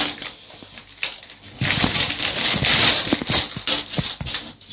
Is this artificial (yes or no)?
no